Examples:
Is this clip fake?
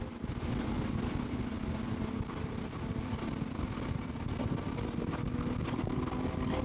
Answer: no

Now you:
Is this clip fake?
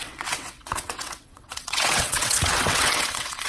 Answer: yes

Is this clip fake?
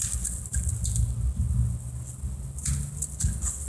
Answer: no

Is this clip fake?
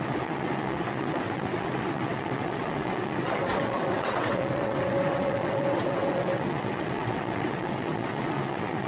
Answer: yes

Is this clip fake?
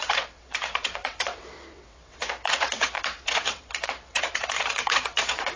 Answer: yes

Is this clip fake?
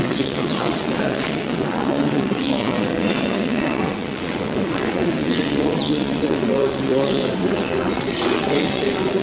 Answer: yes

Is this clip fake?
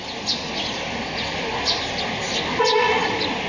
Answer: no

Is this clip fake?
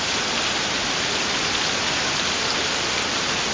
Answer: no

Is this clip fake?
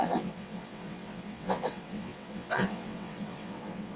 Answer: yes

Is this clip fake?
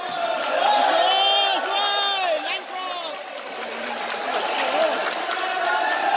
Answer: no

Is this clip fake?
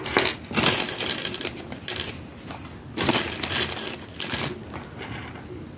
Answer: no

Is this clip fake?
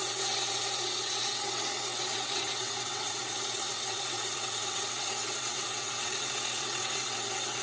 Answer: yes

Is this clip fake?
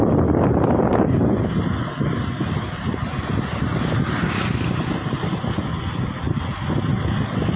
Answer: no